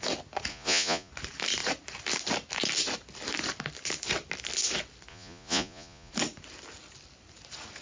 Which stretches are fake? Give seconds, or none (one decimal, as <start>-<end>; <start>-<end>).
0.5-1.1; 5.1-6.1